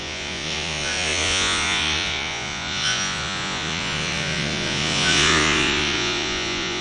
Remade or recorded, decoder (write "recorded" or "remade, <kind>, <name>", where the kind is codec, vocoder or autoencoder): remade, vocoder, Vocos